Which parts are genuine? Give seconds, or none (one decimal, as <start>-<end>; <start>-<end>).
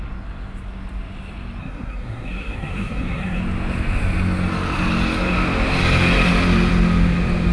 0.0-1.6; 3.4-7.5